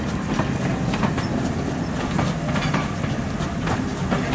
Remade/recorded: recorded